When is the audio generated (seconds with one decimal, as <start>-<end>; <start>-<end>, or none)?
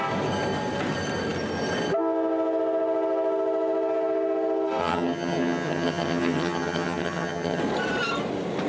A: 4.8-7.6